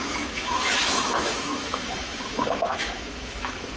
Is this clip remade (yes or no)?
yes